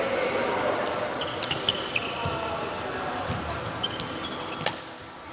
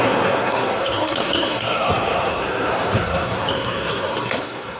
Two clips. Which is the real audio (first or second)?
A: first